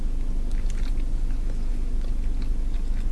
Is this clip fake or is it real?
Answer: real